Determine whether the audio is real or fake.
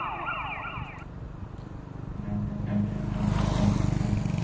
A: real